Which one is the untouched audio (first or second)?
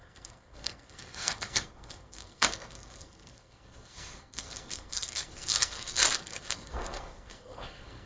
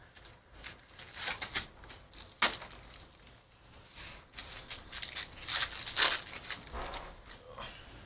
second